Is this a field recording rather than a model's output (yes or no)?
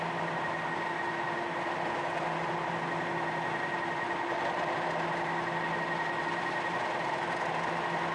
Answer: yes